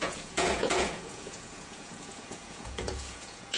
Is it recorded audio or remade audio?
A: remade